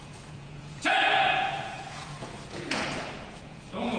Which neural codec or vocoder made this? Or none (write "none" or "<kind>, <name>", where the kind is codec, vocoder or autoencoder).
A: vocoder, Vocos